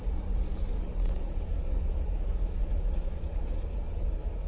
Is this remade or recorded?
recorded